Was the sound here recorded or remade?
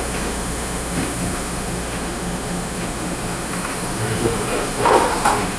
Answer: remade